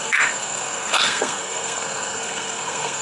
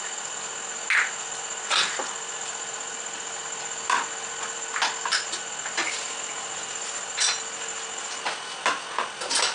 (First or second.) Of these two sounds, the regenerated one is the first